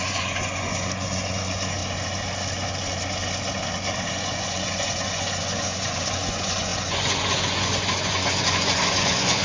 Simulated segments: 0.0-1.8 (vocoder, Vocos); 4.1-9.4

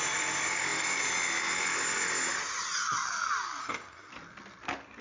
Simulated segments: 3.6-4.1 (codec, SNAC)